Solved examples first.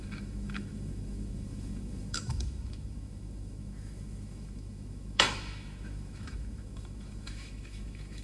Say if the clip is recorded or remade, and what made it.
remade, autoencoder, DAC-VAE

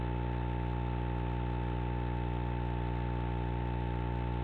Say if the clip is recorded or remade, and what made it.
recorded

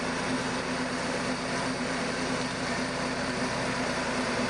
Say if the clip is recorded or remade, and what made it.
remade, vocoder, BigVGAN v2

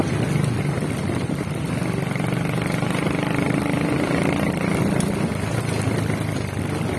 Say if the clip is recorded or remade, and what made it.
recorded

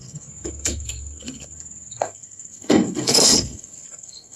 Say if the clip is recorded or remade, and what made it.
remade, codec, SNAC